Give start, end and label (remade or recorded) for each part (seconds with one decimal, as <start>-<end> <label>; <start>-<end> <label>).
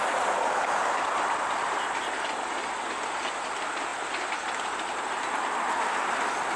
0.0-6.6 recorded